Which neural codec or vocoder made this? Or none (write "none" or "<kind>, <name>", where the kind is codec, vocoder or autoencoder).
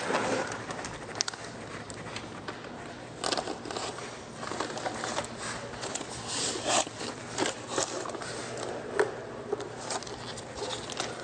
none